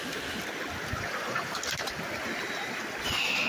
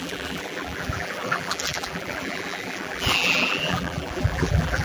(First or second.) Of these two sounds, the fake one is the second